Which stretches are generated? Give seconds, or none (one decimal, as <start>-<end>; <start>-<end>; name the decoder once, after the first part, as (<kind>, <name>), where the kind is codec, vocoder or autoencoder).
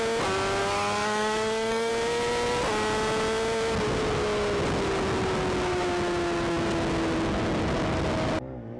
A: 0.6-1.9 (codec, DAC)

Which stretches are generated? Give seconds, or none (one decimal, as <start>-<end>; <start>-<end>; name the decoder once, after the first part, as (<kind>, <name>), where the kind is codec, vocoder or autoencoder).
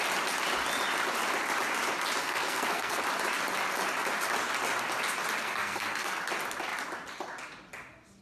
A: 2.2-3.0 (codec, SNAC); 5.4-6.2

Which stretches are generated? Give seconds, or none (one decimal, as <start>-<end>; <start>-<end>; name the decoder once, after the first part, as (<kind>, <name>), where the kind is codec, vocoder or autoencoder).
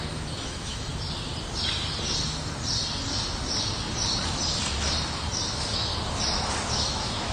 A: 0.0-0.9 (autoencoder, DAC-VAE); 5.3-5.9; 6.7-7.3